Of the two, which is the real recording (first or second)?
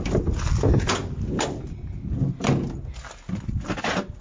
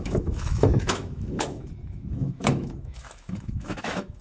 first